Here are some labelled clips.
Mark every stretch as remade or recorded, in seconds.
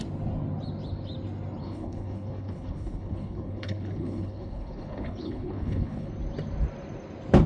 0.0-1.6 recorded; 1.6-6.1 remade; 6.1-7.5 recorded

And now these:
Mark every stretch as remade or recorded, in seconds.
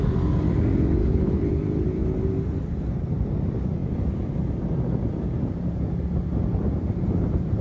0.0-1.0 recorded; 1.0-1.5 remade; 1.5-7.6 recorded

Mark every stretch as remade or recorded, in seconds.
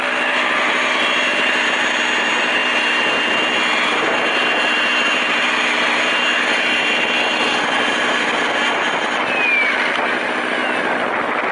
0.0-11.5 recorded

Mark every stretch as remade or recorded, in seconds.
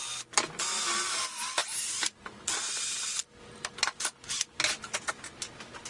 0.0-5.9 recorded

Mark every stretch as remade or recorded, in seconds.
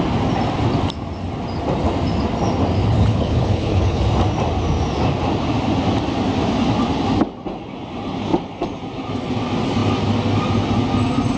0.0-2.8 recorded; 2.8-4.0 remade; 4.0-11.4 recorded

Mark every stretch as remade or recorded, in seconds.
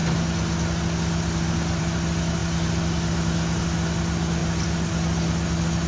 0.0-5.9 recorded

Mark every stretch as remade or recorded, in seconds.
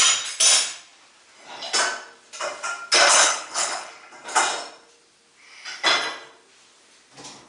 0.0-3.1 recorded; 3.1-3.9 remade; 3.9-7.5 recorded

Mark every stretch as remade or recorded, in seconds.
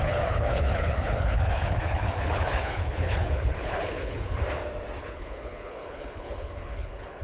0.0-4.4 remade; 4.4-5.0 recorded; 5.0-7.2 remade